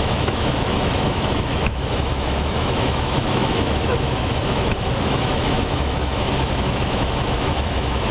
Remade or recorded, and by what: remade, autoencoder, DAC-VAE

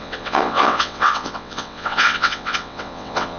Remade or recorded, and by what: remade, vocoder, WaveNeXt